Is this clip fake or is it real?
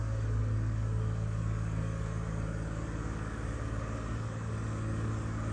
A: fake